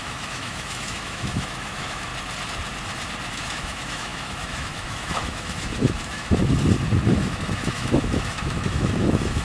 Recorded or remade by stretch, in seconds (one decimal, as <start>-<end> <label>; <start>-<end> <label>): 0.0-2.1 remade; 2.1-3.3 recorded; 3.3-6.4 remade; 6.4-7.1 recorded; 7.1-9.4 remade